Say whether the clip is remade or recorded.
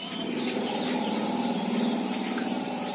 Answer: recorded